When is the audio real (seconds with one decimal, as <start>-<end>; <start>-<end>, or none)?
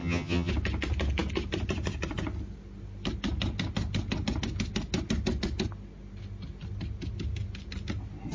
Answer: 0.5-8.3